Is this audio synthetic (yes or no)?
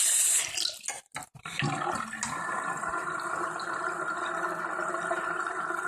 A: no